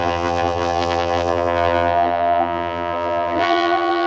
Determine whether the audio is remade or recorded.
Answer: remade